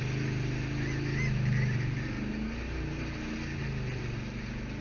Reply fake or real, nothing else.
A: real